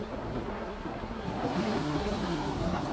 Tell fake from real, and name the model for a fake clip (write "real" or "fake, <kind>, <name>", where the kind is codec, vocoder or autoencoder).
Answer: fake, codec, SNAC